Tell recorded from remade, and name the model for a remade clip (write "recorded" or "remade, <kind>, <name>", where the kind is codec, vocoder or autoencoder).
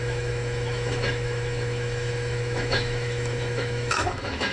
remade, autoencoder, DAC-VAE